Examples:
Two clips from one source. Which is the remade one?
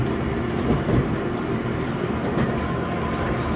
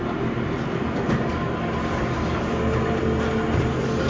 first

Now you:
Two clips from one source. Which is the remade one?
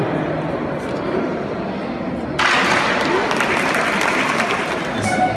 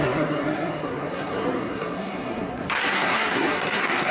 second